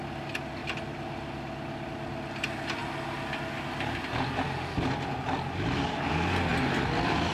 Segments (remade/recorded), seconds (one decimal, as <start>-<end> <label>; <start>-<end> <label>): 0.0-7.3 recorded